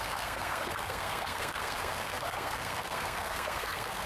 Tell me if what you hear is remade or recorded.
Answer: remade